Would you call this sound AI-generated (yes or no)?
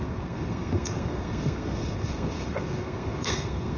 yes